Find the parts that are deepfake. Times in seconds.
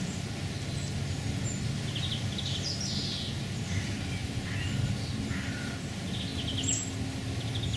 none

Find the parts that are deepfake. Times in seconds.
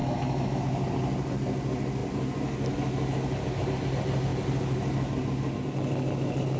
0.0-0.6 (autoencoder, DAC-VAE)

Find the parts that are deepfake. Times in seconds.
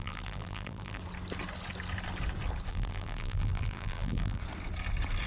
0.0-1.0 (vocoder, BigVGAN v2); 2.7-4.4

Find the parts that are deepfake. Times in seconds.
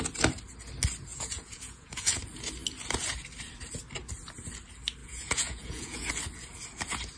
1.1-2.2 (vocoder, Vocos); 5.0-6.1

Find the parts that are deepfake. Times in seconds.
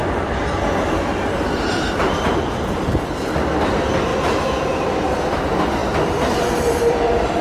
1.9-4.1 (vocoder, BigVGAN v2); 4.8-5.8; 6.6-7.4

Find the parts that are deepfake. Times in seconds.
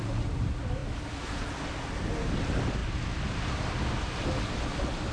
none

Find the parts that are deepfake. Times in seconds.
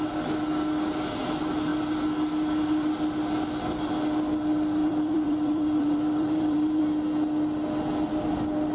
4.8-6.8 (vocoder, BigVGAN v2)